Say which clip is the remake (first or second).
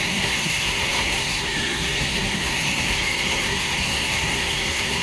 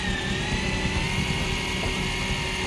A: first